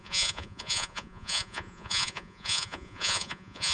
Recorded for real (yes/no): no